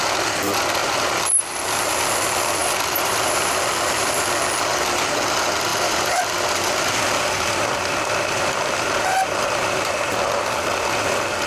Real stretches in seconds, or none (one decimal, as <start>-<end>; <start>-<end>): 0.0-0.8; 1.6-2.6; 4.2-5.7; 10.2-11.5